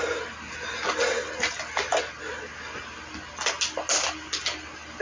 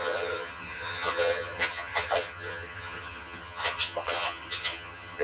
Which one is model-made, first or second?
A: second